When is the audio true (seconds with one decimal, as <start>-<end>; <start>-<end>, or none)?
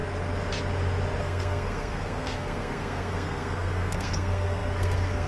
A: 0.0-1.2